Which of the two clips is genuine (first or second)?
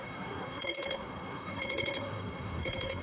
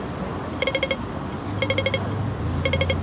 second